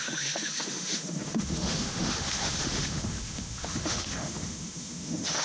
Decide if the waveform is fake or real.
fake